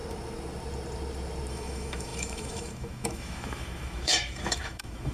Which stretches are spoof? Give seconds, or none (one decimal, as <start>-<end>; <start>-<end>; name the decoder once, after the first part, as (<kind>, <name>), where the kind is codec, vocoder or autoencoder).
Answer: 1.5-5.1 (autoencoder, DAC-VAE)